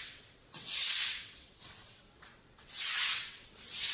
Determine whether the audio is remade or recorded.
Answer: remade